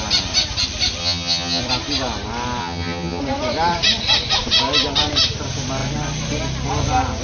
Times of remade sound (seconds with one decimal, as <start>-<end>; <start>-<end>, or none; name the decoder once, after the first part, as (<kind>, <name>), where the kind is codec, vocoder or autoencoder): 1.0-1.6 (vocoder, HiFi-GAN); 2.6-3.2